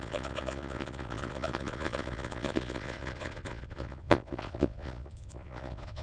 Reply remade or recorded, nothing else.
remade